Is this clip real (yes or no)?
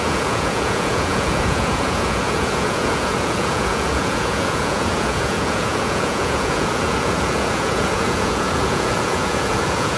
no